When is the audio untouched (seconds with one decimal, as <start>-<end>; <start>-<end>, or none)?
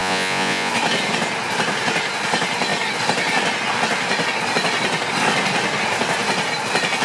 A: 0.7-7.0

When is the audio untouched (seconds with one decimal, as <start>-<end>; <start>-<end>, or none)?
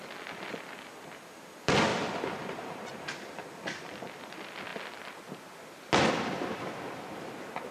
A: 0.0-7.7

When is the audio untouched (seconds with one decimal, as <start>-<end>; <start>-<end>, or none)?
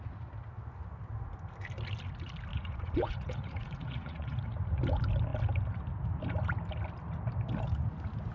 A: 0.0-2.5; 4.8-8.3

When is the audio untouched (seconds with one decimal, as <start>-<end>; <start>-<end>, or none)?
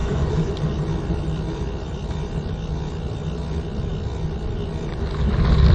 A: 0.5-5.7